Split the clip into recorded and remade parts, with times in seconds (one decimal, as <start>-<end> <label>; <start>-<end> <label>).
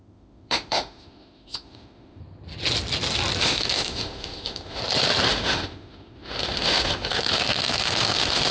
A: 0.0-2.2 remade; 2.2-3.4 recorded; 3.4-4.8 remade; 4.8-5.3 recorded; 5.3-8.5 remade